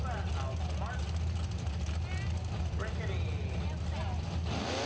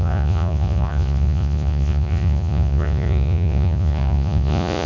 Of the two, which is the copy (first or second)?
second